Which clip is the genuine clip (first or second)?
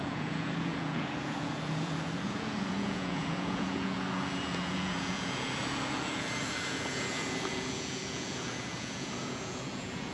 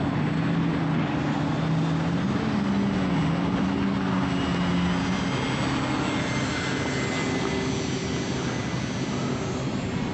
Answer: second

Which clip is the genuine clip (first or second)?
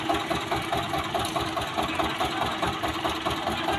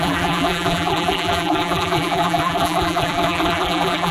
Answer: first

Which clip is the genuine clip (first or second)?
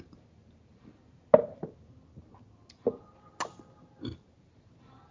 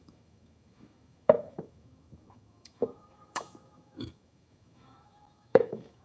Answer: first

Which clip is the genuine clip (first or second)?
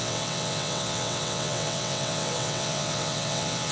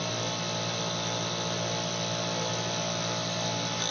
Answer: second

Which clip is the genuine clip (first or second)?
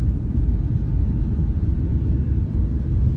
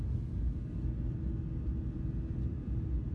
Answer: second